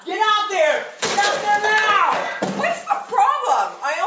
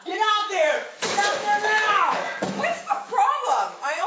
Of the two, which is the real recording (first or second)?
first